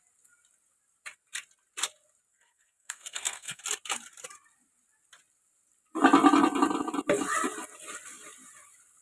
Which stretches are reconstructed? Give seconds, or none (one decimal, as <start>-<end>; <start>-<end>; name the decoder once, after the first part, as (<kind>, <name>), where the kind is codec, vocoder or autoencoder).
2.3-3.6 (codec, SNAC)